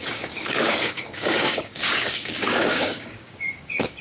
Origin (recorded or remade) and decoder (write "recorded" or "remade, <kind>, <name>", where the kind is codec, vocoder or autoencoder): remade, codec, DAC